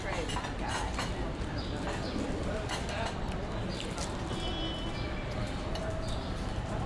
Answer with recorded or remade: recorded